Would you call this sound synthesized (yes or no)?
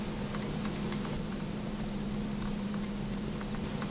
no